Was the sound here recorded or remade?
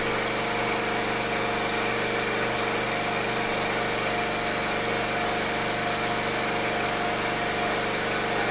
recorded